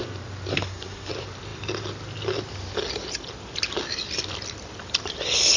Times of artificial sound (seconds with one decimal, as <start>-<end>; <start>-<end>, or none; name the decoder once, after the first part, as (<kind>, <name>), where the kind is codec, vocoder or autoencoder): 0.5-1.1 (codec, SNAC)

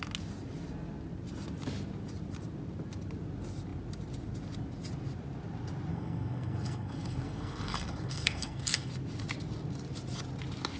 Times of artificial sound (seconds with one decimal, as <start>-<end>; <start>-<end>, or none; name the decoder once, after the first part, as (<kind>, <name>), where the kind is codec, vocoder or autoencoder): 5.9-8.9 (codec, SNAC)

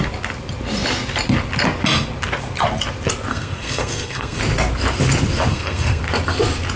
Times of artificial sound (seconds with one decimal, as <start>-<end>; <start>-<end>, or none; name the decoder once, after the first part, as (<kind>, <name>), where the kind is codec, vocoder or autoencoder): 3.3-4.4 (codec, SNAC); 5.5-6.0

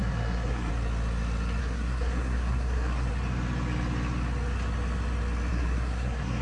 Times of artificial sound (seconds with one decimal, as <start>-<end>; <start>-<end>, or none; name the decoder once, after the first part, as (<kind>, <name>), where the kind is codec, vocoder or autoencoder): 0.0-0.7 (codec, SNAC); 1.6-3.1; 5.5-6.4